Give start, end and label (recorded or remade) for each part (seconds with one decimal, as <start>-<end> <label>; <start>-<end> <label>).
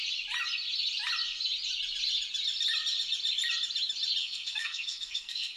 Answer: 0.0-4.2 recorded; 4.2-5.6 remade